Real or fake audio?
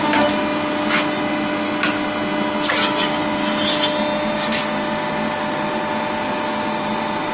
real